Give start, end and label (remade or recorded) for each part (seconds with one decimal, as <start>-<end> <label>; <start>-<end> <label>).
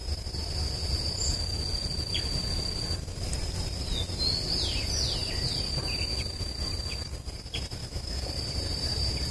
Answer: 0.0-7.8 recorded; 7.8-8.3 remade; 8.3-9.3 recorded